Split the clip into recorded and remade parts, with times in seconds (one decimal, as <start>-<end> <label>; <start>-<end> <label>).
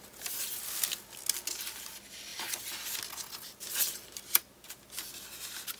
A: 0.0-5.8 recorded